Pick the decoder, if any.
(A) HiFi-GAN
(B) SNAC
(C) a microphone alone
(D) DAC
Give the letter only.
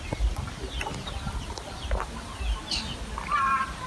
C